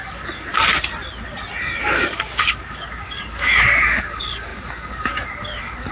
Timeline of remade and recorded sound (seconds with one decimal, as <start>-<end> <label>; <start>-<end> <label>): 0.0-0.5 remade; 0.5-1.5 recorded; 1.5-5.9 remade